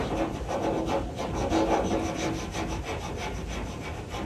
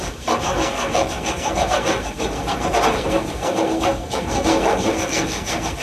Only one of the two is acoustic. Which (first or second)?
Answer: first